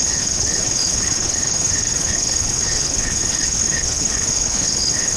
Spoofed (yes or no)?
yes